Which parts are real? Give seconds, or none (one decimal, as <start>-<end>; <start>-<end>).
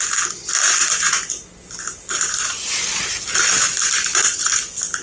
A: 0.0-5.0